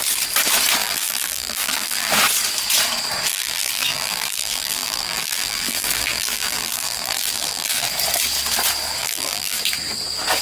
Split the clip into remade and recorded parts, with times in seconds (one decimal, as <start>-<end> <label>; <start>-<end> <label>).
0.0-0.8 recorded; 0.8-2.1 remade; 2.1-3.3 recorded; 3.3-7.9 remade; 7.9-9.0 recorded; 9.0-9.6 remade; 9.6-10.4 recorded